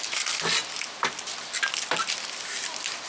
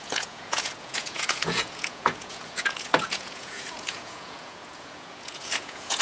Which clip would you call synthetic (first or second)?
second